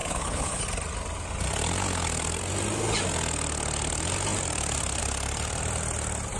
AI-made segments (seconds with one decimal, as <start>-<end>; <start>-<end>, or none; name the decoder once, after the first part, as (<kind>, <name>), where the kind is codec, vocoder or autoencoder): 0.0-0.6 (codec, HILCodec)